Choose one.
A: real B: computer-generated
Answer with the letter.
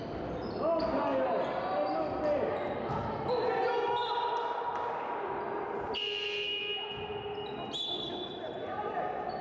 A